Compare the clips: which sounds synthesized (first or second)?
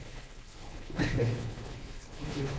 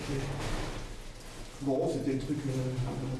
first